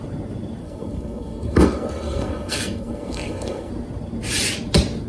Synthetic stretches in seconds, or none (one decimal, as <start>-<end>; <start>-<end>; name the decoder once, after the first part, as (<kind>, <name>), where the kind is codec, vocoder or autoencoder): 0.6-3.7 (codec, SNAC)